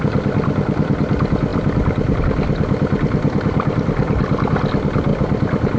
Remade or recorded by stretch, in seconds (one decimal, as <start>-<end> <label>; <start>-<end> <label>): 0.0-1.5 recorded; 1.5-2.2 remade; 2.2-5.1 recorded; 5.1-5.8 remade